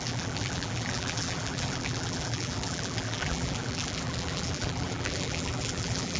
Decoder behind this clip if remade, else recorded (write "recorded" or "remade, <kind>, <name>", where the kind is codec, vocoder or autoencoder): remade, vocoder, BigVGAN v2